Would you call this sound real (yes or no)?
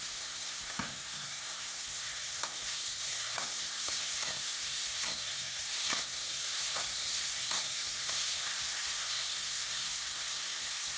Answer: no